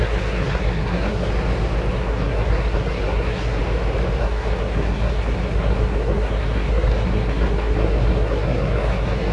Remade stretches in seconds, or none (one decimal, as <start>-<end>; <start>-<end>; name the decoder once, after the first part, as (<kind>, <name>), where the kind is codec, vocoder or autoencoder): 0.0-1.3 (codec, SNAC); 1.9-3.6; 4.2-9.3